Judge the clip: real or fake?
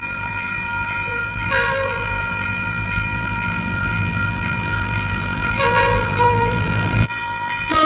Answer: fake